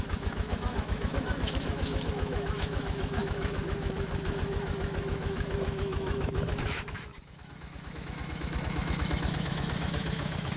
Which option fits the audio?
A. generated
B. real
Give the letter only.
A